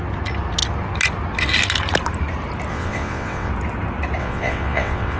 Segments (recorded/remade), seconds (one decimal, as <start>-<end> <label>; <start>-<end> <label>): 0.0-2.7 recorded; 2.7-3.5 remade; 3.5-4.2 recorded; 4.2-5.2 remade